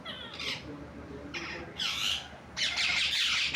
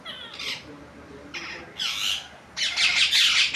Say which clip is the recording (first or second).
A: second